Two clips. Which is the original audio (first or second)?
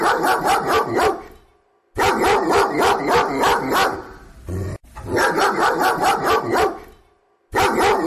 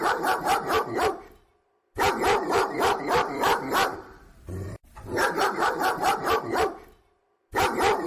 first